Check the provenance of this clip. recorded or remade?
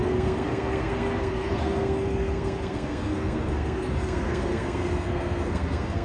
remade